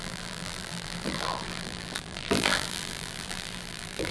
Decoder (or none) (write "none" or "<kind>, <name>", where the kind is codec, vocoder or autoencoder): vocoder, BigVGAN v2